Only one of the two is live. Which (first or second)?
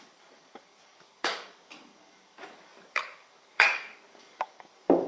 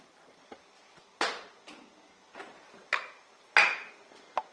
second